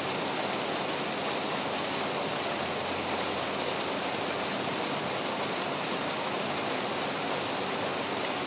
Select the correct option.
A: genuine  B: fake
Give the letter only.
A